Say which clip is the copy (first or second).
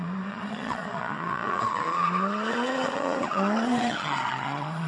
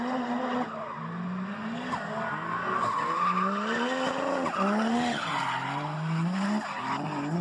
first